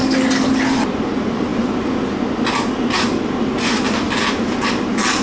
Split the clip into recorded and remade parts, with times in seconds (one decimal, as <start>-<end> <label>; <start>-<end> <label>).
0.0-5.2 recorded